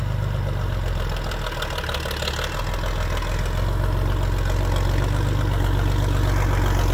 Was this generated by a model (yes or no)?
no